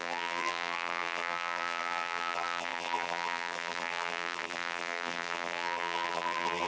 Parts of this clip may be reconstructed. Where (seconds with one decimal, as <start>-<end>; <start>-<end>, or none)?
0.0-6.7